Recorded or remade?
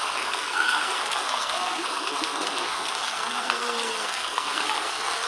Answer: remade